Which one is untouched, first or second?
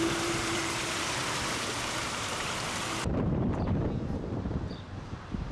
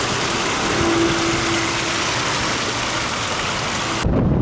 second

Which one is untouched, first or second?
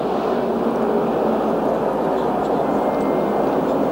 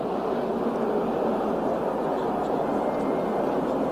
first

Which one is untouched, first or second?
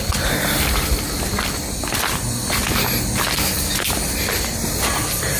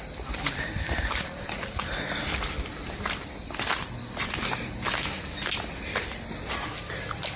first